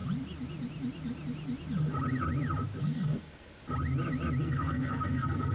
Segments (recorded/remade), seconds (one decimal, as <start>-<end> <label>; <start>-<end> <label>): 0.0-2.8 recorded; 2.8-3.6 remade; 3.6-4.4 recorded; 4.4-5.5 remade